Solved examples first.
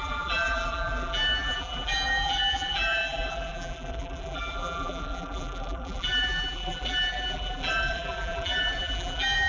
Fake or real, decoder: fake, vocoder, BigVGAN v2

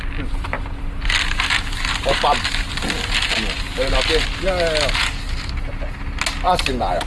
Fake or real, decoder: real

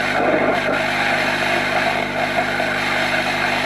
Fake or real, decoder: real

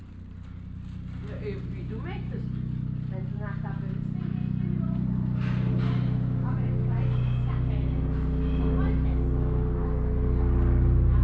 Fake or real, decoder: real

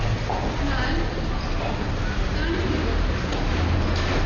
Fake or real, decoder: real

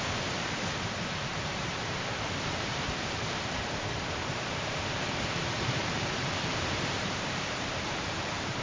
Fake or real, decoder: fake, vocoder, BigVGAN v2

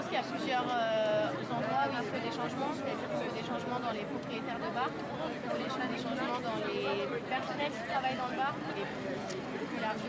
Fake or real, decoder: real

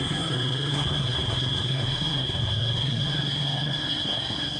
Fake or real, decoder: fake, codec, SNAC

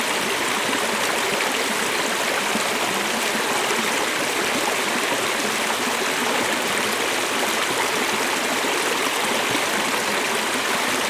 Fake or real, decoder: real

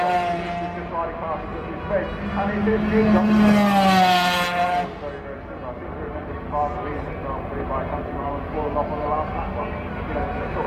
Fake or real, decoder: real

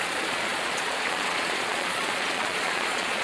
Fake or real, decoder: fake, vocoder, Vocos